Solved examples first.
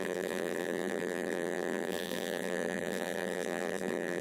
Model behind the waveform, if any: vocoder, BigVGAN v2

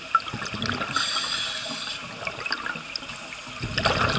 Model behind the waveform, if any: none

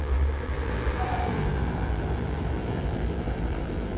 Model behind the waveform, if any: vocoder, BigVGAN v2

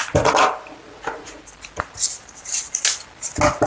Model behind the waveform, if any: none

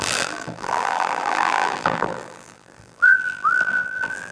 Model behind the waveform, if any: vocoder, BigVGAN v2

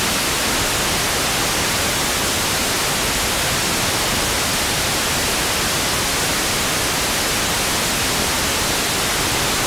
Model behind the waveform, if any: none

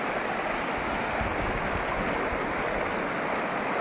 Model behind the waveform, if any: none